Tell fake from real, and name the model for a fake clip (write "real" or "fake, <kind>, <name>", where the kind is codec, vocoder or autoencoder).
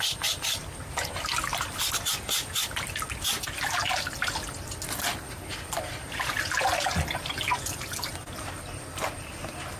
real